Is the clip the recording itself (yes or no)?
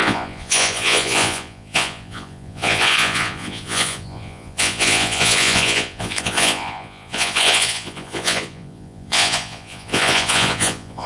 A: no